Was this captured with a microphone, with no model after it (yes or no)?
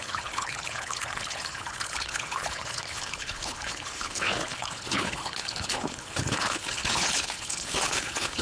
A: no